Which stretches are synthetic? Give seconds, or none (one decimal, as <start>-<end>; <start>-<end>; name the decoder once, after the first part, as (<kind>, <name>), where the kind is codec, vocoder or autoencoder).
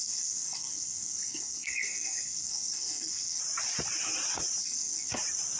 0.0-3.4 (codec, SNAC); 4.6-5.1